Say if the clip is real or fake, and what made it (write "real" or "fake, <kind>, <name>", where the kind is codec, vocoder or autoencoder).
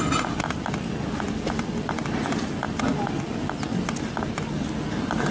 real